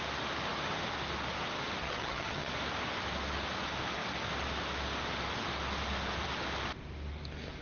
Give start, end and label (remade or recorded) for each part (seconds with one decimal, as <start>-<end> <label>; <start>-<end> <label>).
0.0-1.8 recorded; 1.8-2.5 remade; 2.5-7.6 recorded